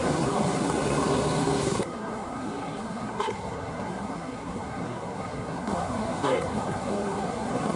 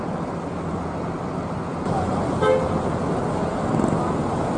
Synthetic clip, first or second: first